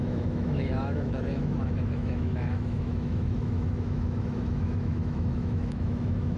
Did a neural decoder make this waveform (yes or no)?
yes